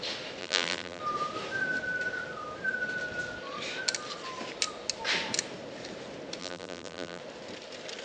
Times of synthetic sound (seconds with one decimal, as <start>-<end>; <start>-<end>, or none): 0.4-1.0; 6.4-7.2